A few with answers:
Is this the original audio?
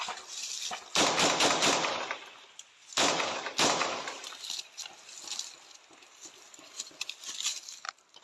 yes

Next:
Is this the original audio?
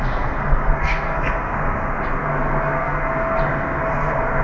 no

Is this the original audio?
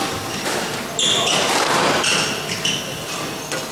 yes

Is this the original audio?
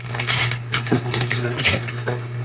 no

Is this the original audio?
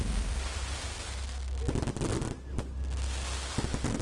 yes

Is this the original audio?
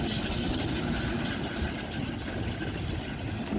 yes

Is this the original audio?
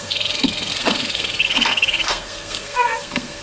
no